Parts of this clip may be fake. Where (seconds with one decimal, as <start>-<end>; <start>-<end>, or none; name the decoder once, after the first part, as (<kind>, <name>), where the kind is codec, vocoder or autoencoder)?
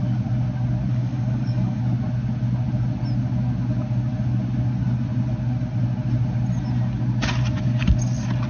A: 0.9-1.8 (codec, DAC)